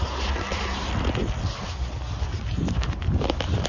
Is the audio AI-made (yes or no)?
no